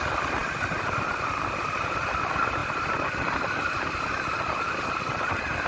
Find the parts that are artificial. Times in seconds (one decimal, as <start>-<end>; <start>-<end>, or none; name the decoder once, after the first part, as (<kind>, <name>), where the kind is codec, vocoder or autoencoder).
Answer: none